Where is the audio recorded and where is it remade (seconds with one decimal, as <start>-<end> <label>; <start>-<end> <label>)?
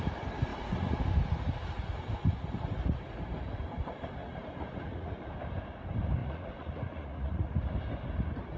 0.0-0.5 recorded; 0.5-1.0 remade; 1.0-4.2 recorded; 4.2-5.2 remade; 5.2-6.2 recorded; 6.2-7.6 remade; 7.6-8.6 recorded